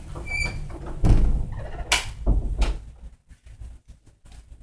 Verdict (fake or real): real